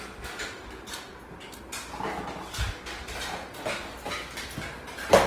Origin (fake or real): real